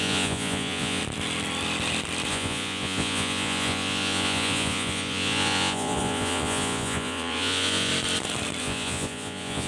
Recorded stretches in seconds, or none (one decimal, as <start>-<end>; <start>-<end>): 1.0-2.3; 7.9-8.6